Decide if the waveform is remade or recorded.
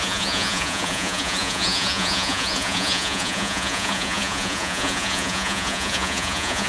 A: remade